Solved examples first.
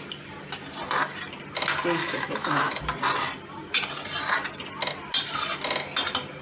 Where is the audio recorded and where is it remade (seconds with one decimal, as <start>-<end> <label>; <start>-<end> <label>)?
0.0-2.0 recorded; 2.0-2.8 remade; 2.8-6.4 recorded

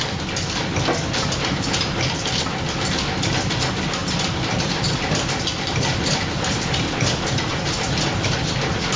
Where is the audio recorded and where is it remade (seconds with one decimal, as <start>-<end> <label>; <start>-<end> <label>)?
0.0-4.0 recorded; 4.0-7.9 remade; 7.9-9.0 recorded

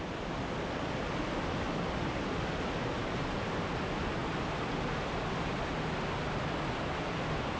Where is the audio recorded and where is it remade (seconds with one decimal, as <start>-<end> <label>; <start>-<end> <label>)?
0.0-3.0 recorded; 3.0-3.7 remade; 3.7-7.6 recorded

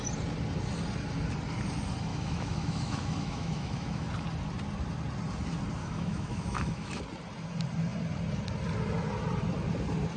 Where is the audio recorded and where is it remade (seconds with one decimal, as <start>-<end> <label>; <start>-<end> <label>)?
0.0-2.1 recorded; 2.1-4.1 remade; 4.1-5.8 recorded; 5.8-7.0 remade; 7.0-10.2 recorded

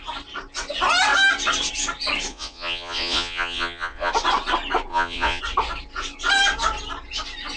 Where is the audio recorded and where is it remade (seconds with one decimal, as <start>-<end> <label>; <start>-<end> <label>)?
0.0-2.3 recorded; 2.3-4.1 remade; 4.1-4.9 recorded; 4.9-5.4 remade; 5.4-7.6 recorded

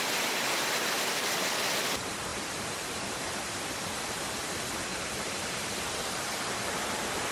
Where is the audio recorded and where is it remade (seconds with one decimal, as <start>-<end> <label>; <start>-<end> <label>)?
0.0-2.3 recorded; 2.3-4.0 remade; 4.0-4.9 recorded; 4.9-5.8 remade; 5.8-7.3 recorded